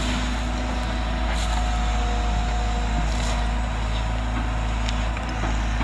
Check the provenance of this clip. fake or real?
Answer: real